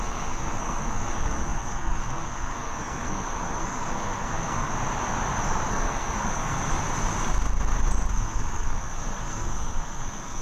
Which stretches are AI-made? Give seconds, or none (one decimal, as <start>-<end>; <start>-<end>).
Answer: 0.0-4.7; 5.7-6.8; 8.1-10.4